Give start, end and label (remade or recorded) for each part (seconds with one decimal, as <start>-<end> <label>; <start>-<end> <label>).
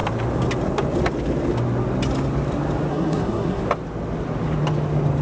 0.0-2.9 recorded; 2.9-3.6 remade; 3.6-5.2 recorded